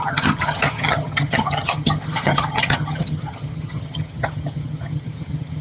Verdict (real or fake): fake